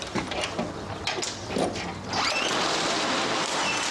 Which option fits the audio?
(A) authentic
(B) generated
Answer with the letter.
A